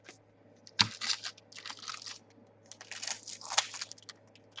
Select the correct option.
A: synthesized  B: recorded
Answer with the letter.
B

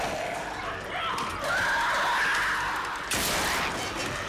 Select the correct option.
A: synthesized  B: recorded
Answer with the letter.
B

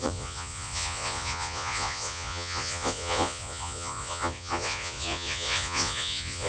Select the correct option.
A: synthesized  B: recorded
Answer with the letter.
A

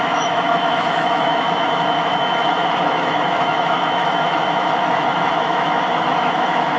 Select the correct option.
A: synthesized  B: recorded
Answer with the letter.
A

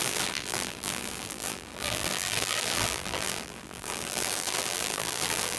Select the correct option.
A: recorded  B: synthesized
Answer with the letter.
B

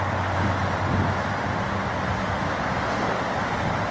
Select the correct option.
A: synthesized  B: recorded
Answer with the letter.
B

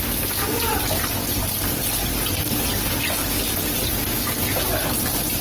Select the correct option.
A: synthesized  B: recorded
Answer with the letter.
B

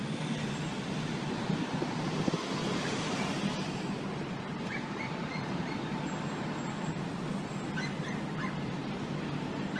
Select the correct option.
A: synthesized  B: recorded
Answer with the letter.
B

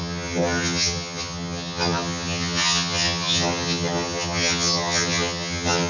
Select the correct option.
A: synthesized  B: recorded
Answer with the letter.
A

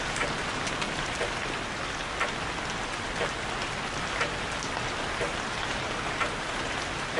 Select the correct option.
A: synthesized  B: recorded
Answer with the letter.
B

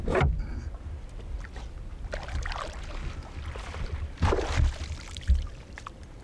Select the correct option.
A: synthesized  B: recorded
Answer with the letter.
B